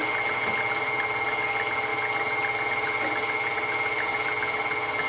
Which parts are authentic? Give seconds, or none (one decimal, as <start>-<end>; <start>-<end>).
0.0-5.1